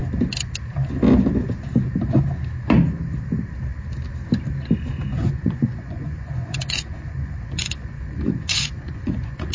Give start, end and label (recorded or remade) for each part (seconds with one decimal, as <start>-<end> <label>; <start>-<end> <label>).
0.0-5.2 recorded; 5.2-9.5 remade